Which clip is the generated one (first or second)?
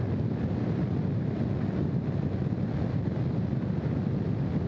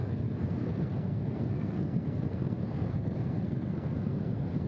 second